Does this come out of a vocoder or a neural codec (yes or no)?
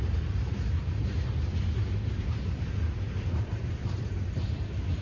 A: yes